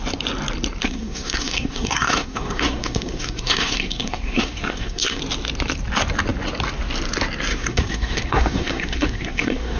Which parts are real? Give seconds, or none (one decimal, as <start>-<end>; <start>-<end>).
0.0-0.8; 5.2-7.5